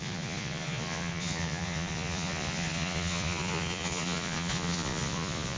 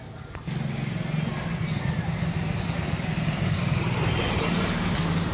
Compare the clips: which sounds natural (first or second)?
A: second